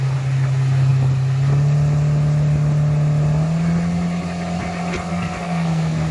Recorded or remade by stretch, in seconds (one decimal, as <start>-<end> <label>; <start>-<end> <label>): 0.0-5.1 recorded; 5.1-6.1 remade